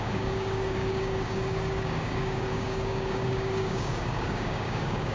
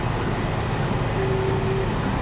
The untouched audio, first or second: second